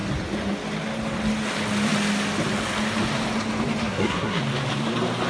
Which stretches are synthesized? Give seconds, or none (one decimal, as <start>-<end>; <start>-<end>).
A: 3.8-4.4